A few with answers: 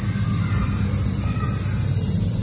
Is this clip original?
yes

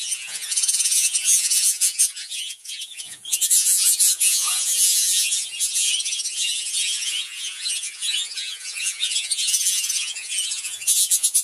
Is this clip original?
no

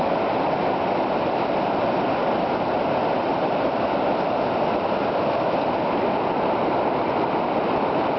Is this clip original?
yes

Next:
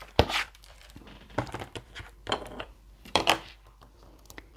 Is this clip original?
no